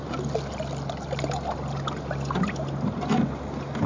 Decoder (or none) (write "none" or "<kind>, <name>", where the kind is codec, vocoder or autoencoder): none